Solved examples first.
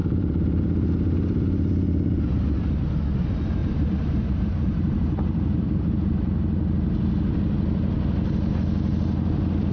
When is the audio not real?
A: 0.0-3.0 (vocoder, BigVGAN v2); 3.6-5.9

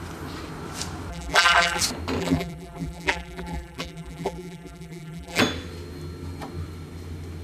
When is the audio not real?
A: 1.1-1.8 (vocoder, BigVGAN v2); 2.2-5.4

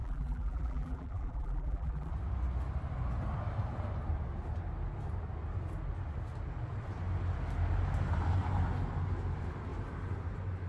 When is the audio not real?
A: 0.0-2.1 (vocoder, BigVGAN v2)

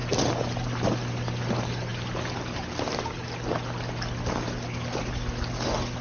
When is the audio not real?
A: none